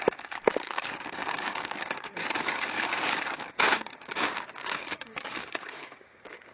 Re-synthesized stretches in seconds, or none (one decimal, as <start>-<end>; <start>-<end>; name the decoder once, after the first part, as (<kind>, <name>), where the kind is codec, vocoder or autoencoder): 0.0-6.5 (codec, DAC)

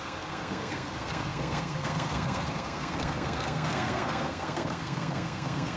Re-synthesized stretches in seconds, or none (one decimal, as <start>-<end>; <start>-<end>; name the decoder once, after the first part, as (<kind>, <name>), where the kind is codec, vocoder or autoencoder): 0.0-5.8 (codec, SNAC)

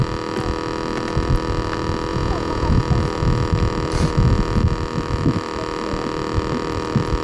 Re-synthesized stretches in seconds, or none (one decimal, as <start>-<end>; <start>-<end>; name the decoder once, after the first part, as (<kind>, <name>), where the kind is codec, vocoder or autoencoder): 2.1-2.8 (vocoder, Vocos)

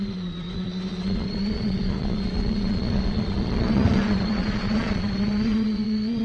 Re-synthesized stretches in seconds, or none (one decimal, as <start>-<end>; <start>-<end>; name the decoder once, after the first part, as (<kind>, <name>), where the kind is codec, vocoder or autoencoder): 0.0-6.2 (vocoder, Vocos)

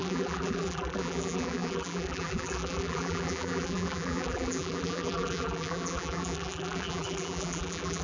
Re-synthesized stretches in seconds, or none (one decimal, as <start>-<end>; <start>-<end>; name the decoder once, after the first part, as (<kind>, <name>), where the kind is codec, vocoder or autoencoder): 0.0-8.0 (vocoder, BigVGAN v2)

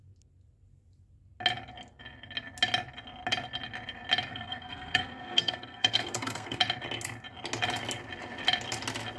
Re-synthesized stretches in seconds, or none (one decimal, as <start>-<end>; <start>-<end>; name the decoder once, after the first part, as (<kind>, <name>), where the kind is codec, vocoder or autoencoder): 4.3-6.6 (codec, SNAC)